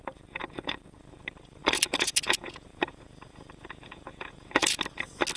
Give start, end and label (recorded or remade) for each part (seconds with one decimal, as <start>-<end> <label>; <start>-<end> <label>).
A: 0.0-0.4 recorded; 0.4-1.0 remade; 1.0-1.6 recorded; 1.6-4.8 remade; 4.8-5.4 recorded